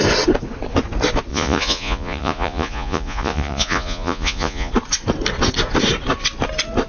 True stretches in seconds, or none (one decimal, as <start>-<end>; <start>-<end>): 0.0-1.3; 4.7-6.9